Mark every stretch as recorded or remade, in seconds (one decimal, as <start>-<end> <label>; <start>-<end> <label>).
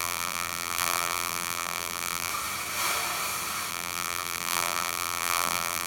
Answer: 0.0-2.3 remade; 2.3-3.7 recorded; 3.7-5.9 remade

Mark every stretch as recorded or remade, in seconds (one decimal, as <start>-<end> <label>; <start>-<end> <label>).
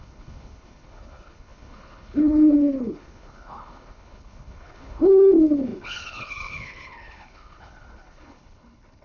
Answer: 0.0-9.0 remade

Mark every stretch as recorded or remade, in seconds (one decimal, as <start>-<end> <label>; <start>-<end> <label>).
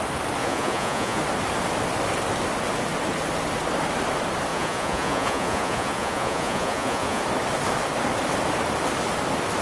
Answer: 0.0-0.4 recorded; 0.4-1.2 remade; 1.2-4.5 recorded; 4.5-7.2 remade; 7.2-9.6 recorded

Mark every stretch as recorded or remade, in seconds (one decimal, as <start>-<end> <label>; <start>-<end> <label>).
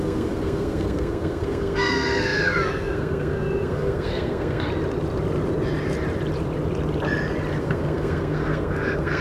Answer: 0.0-4.7 remade; 4.7-7.6 recorded; 7.6-9.2 remade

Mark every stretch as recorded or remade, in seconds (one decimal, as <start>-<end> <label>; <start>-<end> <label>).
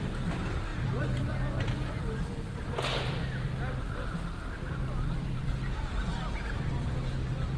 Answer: 0.0-7.6 recorded